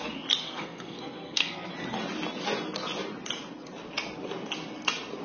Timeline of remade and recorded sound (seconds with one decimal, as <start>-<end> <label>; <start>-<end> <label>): 0.0-0.4 recorded; 0.4-1.7 remade; 1.7-5.2 recorded